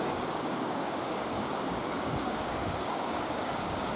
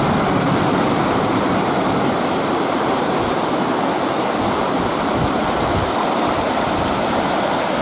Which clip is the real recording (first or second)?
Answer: second